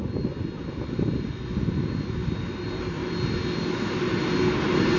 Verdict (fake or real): real